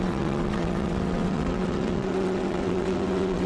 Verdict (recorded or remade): remade